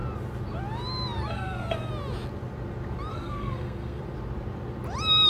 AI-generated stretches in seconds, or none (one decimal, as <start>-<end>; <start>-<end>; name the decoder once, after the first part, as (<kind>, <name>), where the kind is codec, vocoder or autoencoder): 1.3-1.9 (codec, SNAC); 3.1-4.0